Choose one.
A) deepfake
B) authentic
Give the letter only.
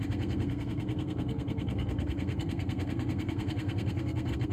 A